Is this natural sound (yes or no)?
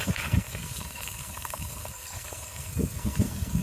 no